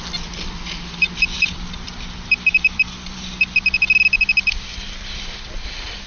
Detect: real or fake fake